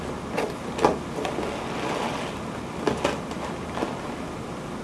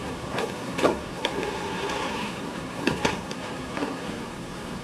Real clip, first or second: first